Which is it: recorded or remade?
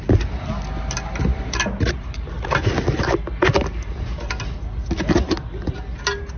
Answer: recorded